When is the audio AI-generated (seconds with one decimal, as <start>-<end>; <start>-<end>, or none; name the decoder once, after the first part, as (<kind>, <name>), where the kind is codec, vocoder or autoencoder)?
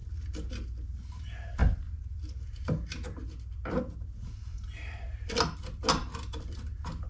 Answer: none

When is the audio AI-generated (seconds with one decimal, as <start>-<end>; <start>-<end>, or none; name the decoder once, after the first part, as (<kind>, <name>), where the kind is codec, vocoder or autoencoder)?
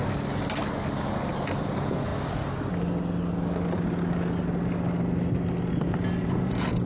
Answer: 1.6-2.1 (vocoder, Vocos); 6.2-6.9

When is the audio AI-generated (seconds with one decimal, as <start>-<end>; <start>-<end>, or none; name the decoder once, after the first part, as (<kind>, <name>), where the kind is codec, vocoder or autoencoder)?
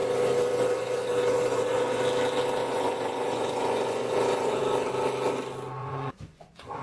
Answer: 0.0-2.0 (vocoder, Vocos); 2.6-4.6; 5.8-6.8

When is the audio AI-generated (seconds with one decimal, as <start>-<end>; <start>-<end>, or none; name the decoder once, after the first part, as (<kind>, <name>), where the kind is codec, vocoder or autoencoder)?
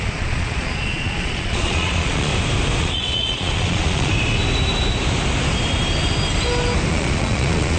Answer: 0.0-2.3 (vocoder, Vocos); 2.8-4.1; 6.9-7.8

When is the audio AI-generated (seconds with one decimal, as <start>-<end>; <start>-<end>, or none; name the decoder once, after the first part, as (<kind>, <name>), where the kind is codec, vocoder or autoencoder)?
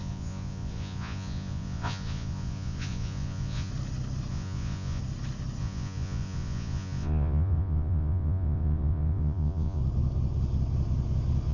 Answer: 0.0-3.7 (vocoder, Vocos); 4.3-5.0; 5.6-9.8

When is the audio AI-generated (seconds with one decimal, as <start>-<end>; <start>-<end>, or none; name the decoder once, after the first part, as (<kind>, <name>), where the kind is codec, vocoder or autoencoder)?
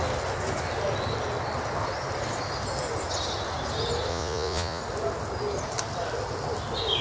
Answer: 4.1-4.8 (vocoder, Vocos)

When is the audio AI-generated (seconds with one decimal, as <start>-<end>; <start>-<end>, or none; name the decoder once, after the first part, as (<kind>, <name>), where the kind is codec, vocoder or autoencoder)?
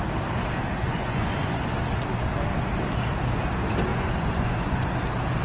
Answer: 0.8-1.6 (vocoder, Vocos); 3.9-5.0